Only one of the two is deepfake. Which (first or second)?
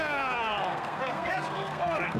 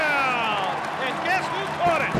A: first